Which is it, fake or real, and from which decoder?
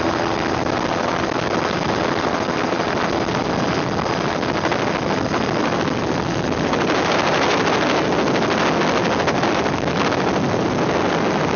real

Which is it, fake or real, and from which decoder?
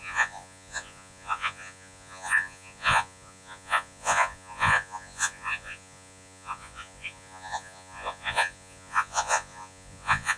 fake, vocoder, Vocos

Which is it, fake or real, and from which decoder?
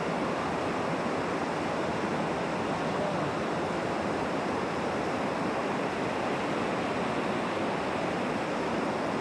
real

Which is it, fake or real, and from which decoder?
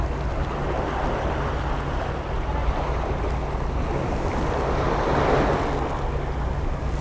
real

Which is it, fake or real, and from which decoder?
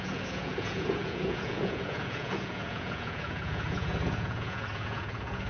fake, vocoder, Vocos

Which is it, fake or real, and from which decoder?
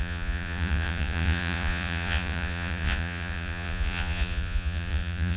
fake, vocoder, Vocos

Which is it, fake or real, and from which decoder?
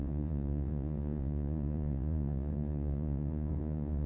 fake, vocoder, Vocos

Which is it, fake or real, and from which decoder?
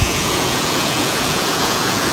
fake, vocoder, Vocos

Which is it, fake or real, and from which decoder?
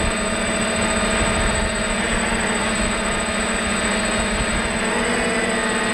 real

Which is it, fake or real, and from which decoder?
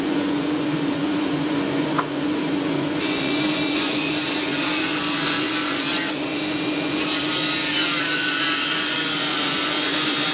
fake, vocoder, Vocos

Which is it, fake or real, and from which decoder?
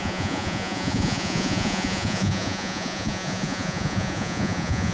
fake, vocoder, Vocos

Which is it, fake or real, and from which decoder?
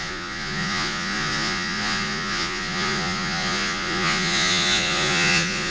fake, vocoder, Vocos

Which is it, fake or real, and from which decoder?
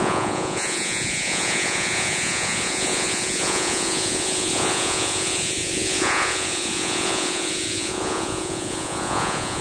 fake, vocoder, Vocos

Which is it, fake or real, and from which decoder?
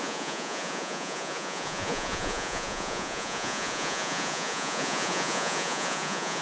fake, vocoder, Vocos